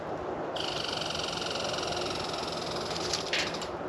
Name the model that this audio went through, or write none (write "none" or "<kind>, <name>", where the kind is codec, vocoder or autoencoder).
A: none